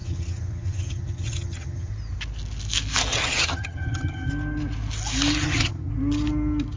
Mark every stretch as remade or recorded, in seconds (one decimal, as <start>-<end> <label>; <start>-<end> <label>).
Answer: 0.0-1.9 remade; 1.9-3.1 recorded; 3.1-4.3 remade; 4.3-5.4 recorded; 5.4-5.9 remade; 5.9-6.8 recorded